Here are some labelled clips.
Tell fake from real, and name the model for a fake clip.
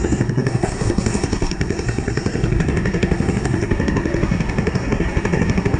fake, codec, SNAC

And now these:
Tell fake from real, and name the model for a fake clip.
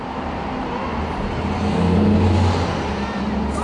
real